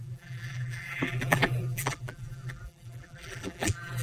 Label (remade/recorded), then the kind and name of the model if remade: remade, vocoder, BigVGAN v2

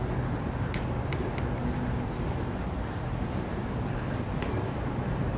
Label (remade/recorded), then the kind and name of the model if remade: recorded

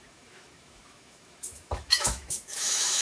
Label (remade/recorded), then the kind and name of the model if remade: remade, autoencoder, DAC-VAE